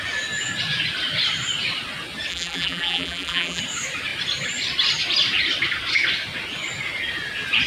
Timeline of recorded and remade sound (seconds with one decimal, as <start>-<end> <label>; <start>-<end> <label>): 0.0-2.3 recorded; 2.3-3.6 remade; 3.6-7.7 recorded